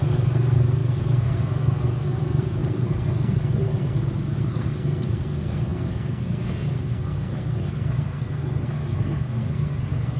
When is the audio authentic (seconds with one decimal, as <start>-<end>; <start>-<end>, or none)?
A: none